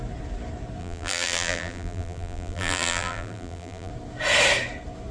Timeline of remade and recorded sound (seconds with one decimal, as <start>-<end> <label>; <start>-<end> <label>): 0.0-0.8 recorded; 0.8-3.9 remade; 3.9-5.1 recorded